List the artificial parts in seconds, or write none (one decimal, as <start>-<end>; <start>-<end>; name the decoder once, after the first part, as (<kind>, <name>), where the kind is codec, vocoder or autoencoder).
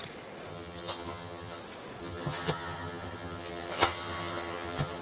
0.5-1.6 (vocoder, HiFi-GAN); 2.0-5.0